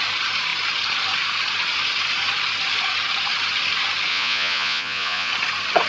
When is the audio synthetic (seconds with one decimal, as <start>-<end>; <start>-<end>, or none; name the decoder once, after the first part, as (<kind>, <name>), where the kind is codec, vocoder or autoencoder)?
4.1-5.3 (vocoder, Vocos)

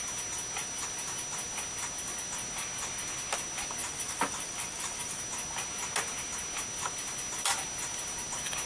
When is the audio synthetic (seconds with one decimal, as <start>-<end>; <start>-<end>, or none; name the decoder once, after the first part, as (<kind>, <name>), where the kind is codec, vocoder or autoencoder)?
3.8-5.2 (vocoder, BigVGAN v2)